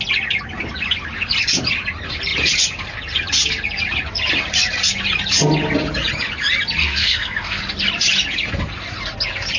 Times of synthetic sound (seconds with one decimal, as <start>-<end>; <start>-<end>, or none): 6.8-7.6